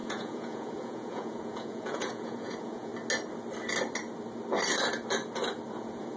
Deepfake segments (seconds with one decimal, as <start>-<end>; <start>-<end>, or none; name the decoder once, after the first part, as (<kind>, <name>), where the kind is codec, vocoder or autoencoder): 0.0-2.9 (vocoder, Vocos); 5.7-6.2